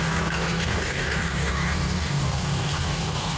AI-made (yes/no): yes